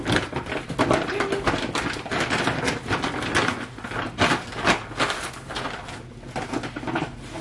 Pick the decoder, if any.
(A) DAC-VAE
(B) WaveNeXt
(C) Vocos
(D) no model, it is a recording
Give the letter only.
D